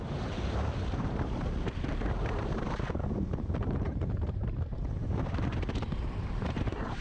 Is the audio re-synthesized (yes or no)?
yes